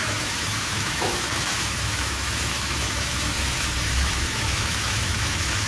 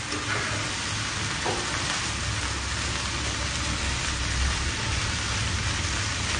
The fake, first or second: first